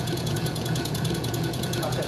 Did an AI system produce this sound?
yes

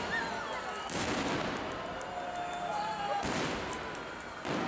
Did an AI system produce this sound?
no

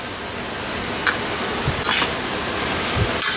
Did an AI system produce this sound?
no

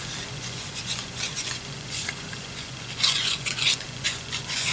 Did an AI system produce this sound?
yes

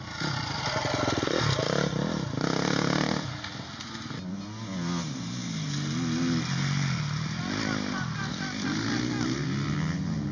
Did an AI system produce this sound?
no